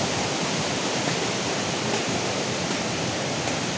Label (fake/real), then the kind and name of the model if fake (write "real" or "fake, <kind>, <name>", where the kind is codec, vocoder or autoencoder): real